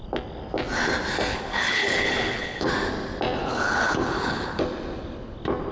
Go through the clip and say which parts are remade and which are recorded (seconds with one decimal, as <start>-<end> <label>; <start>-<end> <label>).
0.0-1.3 recorded; 1.3-2.7 remade; 2.7-3.4 recorded; 3.4-4.6 remade; 4.6-5.7 recorded